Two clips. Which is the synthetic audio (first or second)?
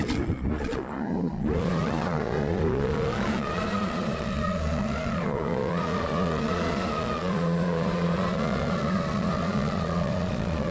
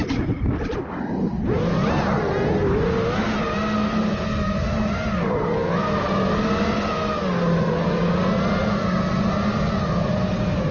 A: first